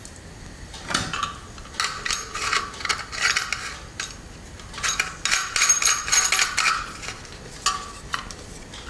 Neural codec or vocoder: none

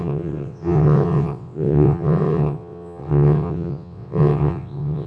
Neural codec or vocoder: vocoder, WaveNeXt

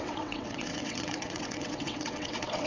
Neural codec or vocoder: vocoder, WaveNeXt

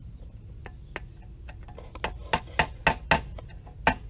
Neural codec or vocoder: none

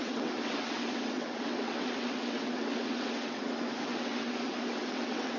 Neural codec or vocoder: vocoder, WaveNeXt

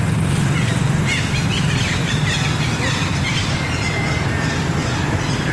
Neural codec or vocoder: none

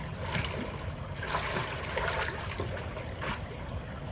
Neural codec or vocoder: none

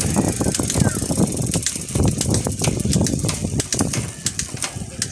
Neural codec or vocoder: none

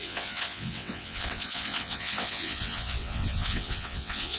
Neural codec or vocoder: vocoder, WaveNeXt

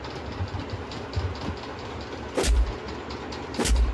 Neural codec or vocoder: none